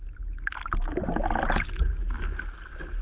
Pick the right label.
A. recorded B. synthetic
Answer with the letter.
A